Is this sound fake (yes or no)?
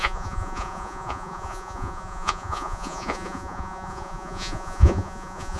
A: yes